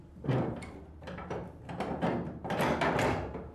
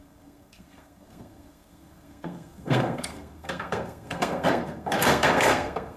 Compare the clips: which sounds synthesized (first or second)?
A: second